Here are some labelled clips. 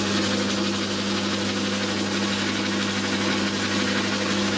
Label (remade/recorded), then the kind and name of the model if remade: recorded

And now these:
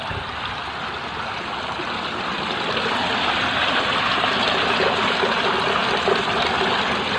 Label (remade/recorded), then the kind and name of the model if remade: recorded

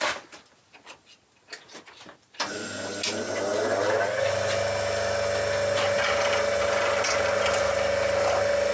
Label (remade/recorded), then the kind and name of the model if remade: recorded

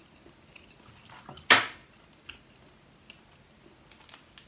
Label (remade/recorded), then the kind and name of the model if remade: recorded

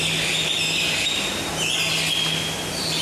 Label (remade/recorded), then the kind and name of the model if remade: recorded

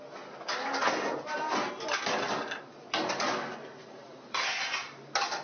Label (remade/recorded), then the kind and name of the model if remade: recorded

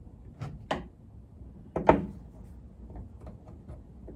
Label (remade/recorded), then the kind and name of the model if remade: recorded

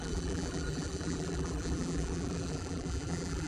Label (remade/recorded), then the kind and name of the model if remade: remade, vocoder, BigVGAN v2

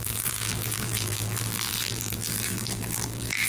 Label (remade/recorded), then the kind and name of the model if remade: remade, vocoder, BigVGAN v2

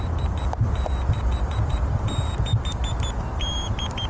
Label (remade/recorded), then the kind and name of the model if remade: remade, vocoder, BigVGAN v2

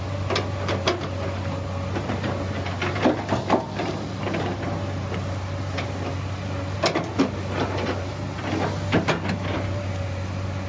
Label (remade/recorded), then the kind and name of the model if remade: recorded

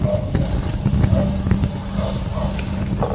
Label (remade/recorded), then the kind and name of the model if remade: recorded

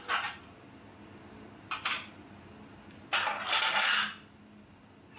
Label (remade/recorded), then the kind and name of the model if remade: recorded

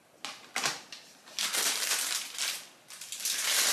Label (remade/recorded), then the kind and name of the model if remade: recorded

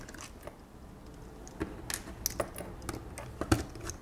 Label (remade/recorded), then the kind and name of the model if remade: recorded